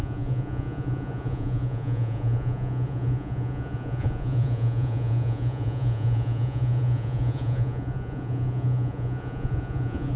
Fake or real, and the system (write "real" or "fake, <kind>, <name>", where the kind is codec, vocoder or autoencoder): fake, vocoder, Vocos